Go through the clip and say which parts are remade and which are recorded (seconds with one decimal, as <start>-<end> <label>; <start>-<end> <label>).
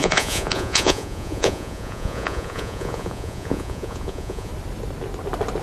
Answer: 0.0-4.5 remade; 4.5-5.6 recorded